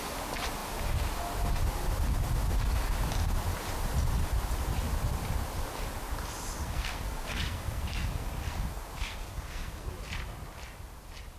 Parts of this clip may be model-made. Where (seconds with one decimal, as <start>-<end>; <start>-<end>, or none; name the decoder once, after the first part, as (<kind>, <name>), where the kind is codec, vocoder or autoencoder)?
6.6-9.9 (codec, SNAC)